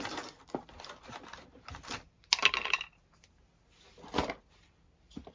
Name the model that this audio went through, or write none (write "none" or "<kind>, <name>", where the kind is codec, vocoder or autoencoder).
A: none